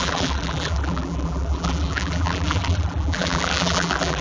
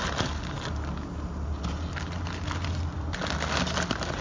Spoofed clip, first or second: first